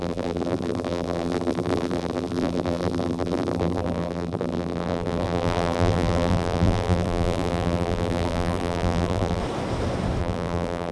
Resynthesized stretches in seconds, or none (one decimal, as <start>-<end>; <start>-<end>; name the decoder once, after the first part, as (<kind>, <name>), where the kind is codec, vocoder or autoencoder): 0.0-9.4 (vocoder, BigVGAN v2); 10.2-10.9